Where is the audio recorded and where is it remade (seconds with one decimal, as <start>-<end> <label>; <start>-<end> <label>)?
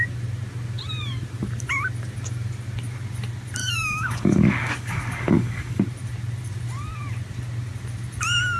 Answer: 0.0-3.6 recorded; 3.6-5.8 remade; 5.8-8.6 recorded